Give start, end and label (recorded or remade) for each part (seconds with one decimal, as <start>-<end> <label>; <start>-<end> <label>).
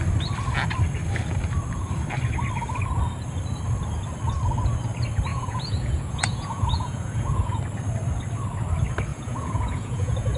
0.0-5.3 recorded; 5.3-7.6 remade; 7.6-9.1 recorded; 9.1-10.4 remade